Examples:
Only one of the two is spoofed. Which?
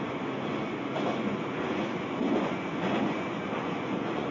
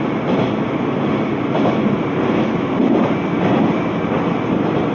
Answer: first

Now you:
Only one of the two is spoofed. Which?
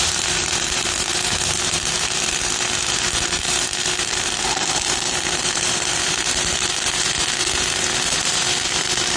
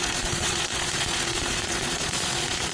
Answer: second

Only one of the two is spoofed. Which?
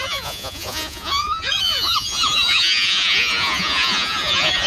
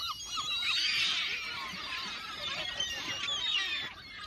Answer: first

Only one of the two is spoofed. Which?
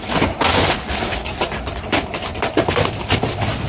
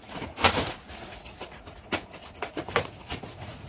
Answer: second